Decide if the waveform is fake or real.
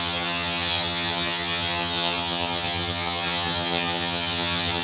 fake